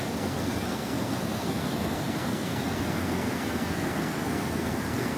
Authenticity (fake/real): fake